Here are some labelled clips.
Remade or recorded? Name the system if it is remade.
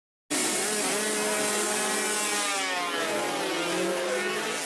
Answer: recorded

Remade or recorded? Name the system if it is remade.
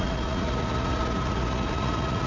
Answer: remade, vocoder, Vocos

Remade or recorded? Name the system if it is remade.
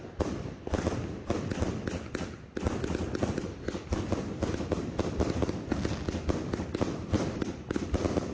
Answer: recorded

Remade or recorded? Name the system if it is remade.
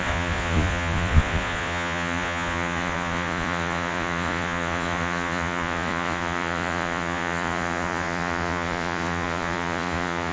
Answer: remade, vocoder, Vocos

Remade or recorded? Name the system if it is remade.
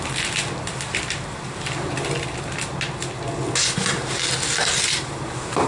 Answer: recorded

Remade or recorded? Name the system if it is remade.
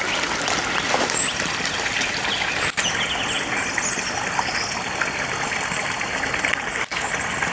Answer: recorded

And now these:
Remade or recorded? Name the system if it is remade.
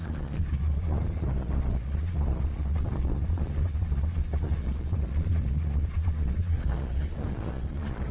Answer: remade, vocoder, Vocos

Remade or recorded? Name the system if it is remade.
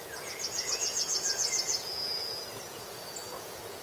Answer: remade, vocoder, Vocos